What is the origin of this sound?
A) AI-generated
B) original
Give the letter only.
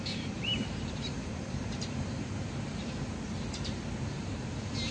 A